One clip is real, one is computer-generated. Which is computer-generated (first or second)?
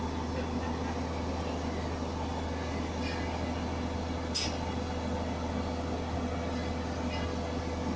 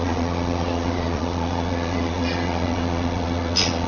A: second